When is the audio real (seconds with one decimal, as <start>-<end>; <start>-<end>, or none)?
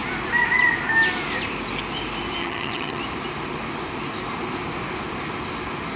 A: 0.0-2.4; 3.0-6.0